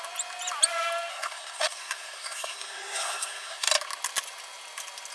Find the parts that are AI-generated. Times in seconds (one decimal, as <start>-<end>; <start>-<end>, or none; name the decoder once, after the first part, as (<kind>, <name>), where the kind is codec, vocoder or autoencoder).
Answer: 1.1-3.7 (codec, SNAC)